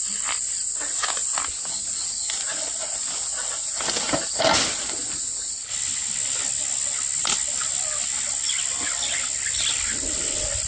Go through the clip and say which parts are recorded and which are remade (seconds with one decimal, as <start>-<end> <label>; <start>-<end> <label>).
0.0-10.7 recorded